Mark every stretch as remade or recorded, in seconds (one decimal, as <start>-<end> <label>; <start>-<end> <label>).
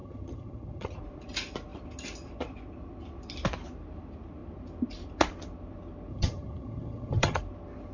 0.0-1.0 remade; 1.0-6.1 recorded; 6.1-7.4 remade; 7.4-7.9 recorded